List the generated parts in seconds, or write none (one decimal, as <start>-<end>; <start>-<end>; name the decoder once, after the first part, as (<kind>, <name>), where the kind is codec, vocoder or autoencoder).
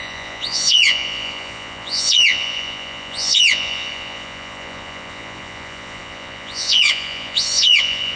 0.0-8.2 (vocoder, Vocos)